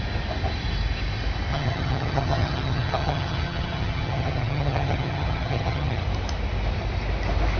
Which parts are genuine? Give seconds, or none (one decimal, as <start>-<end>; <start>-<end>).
0.0-1.5; 6.0-7.6